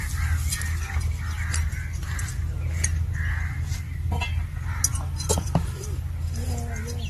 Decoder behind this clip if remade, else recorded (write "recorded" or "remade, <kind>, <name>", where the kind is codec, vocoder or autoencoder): recorded